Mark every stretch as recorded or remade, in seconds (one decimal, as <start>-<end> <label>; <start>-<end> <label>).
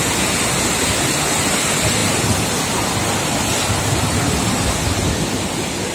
0.0-5.9 recorded